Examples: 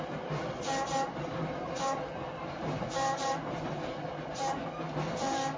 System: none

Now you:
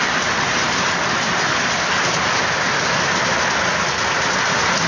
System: vocoder, BigVGAN v2